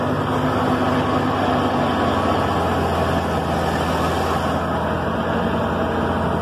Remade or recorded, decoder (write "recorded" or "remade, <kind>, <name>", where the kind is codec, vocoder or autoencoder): recorded